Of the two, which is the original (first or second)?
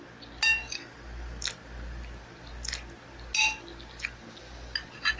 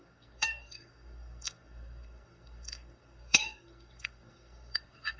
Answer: first